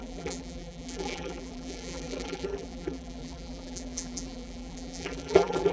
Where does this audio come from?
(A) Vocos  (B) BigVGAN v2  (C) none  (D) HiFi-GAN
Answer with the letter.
B